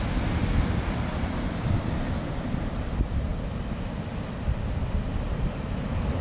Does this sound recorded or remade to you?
recorded